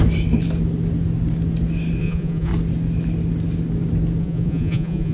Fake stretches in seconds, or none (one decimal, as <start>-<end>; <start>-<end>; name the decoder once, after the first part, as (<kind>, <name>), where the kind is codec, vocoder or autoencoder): 2.0-2.5 (vocoder, Vocos); 4.2-5.1